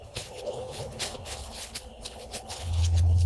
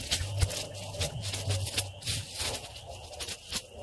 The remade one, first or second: first